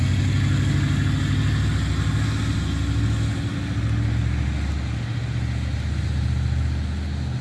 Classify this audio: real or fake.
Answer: real